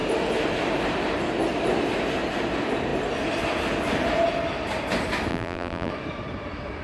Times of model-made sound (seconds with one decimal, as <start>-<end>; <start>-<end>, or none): 5.3-5.9